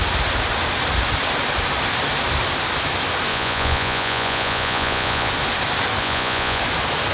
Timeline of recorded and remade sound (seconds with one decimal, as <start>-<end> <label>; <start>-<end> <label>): 0.0-3.3 recorded; 3.3-5.3 remade; 5.3-6.0 recorded; 6.0-6.6 remade; 6.6-7.1 recorded